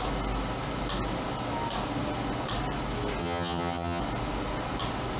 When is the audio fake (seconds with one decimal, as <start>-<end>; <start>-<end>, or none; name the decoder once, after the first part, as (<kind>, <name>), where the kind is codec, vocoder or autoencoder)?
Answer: 3.2-4.0 (vocoder, HiFi-GAN)